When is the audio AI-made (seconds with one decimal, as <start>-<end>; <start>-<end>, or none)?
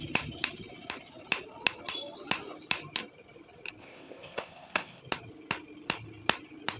3.8-5.0